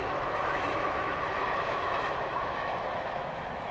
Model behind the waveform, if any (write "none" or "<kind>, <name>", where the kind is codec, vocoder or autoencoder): autoencoder, DAC-VAE